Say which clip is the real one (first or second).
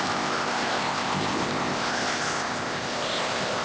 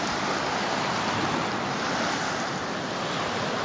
second